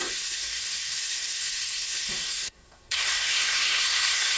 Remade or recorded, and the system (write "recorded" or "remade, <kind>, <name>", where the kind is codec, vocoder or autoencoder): remade, codec, SNAC